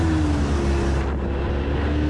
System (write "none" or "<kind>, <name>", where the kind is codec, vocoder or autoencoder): none